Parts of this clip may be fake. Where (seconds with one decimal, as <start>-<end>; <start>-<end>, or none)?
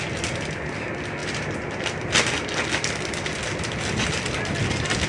none